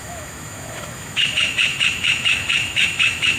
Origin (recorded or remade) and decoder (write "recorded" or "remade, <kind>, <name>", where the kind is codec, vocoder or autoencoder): remade, autoencoder, DAC-VAE